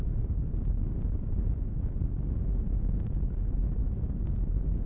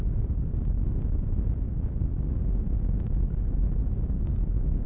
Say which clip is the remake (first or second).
first